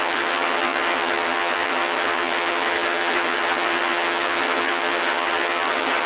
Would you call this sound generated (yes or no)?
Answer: yes